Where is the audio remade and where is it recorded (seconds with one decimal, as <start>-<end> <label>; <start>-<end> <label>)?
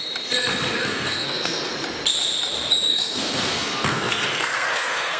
0.0-0.8 recorded; 0.8-1.7 remade; 1.7-2.9 recorded; 2.9-5.2 remade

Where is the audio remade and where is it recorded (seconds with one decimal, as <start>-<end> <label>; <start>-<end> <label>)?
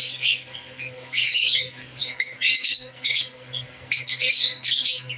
0.0-5.2 remade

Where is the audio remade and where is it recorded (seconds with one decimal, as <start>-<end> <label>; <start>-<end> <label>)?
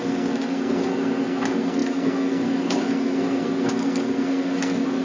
0.0-5.0 remade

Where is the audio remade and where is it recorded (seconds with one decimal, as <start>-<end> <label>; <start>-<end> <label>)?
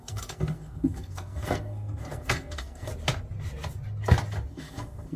0.0-2.9 remade; 2.9-4.5 recorded; 4.5-5.2 remade